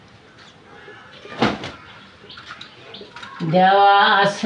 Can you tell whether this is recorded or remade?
recorded